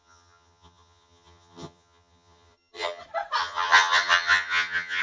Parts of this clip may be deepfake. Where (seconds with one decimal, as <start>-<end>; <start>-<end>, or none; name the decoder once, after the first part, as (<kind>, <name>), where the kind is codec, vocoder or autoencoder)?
0.0-3.0 (vocoder, HiFi-GAN); 3.4-5.0